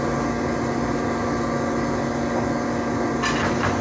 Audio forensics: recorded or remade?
recorded